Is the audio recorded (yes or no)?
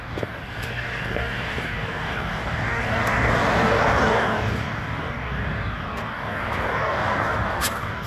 no